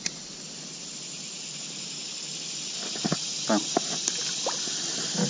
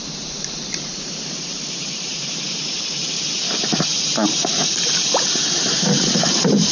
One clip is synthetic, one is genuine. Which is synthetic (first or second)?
second